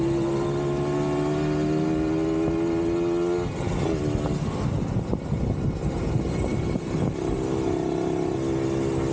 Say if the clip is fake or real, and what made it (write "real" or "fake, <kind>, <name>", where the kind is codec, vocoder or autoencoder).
real